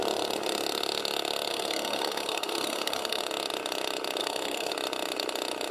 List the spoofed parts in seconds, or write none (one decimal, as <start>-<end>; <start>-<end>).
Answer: 1.5-3.2; 4.2-4.7